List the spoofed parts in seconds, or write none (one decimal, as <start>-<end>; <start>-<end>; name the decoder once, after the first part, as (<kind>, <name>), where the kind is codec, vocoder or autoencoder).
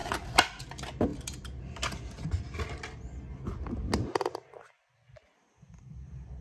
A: none